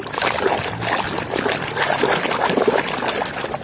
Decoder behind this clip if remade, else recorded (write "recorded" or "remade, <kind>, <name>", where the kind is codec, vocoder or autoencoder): recorded